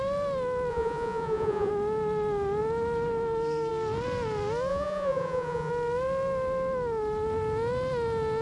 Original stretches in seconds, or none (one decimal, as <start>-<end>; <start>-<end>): 0.0-0.7; 1.7-4.7; 5.7-8.4